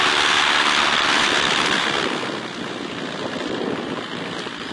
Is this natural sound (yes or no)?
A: yes